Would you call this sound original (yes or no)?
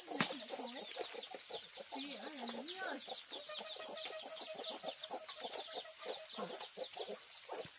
yes